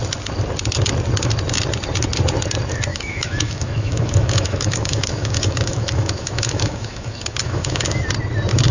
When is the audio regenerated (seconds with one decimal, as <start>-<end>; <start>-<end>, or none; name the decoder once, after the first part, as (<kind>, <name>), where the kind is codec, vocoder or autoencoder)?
2.9-8.0 (autoencoder, DAC-VAE)

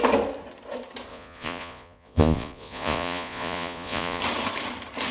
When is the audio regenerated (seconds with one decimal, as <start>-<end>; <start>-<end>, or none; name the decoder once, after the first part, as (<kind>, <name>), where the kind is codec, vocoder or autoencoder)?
1.1-4.2 (vocoder, Vocos)

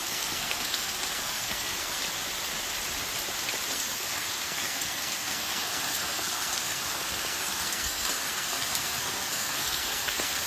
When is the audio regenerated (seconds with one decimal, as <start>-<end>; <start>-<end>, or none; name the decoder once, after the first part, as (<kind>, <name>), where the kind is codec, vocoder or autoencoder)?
0.0-2.0 (codec, SNAC); 3.7-10.5

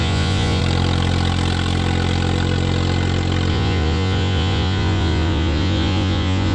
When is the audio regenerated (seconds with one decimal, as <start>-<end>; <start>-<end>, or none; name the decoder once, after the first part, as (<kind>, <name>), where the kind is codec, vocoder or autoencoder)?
0.0-0.6 (vocoder, Vocos); 3.5-6.5

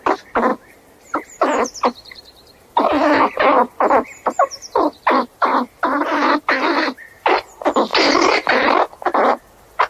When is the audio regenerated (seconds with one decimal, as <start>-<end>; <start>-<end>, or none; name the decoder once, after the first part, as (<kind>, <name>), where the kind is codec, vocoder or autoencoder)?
0.5-2.7 (vocoder, BigVGAN v2); 3.5-7.3; 7.9-9.4

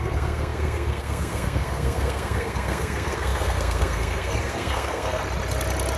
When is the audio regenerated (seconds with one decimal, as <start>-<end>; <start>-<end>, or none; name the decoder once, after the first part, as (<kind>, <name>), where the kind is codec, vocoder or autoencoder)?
0.0-5.2 (codec, SNAC)

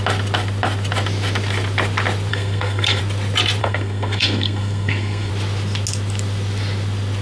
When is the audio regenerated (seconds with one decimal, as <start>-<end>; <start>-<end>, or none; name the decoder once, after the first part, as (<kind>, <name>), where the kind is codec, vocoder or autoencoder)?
2.3-3.0 (codec, SNAC); 3.6-5.3